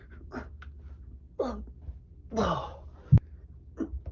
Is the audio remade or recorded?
recorded